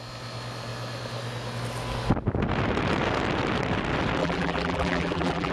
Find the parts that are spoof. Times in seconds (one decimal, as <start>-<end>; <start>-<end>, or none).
4.2-5.5